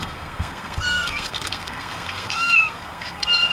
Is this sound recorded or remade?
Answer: remade